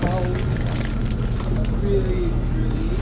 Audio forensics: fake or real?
real